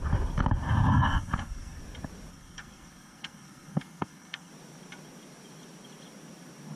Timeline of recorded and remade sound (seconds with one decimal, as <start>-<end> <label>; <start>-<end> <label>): 0.0-0.9 recorded; 0.9-1.8 remade; 1.8-2.3 recorded; 2.3-4.5 remade; 4.5-6.8 recorded